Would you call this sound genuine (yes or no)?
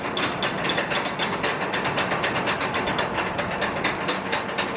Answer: yes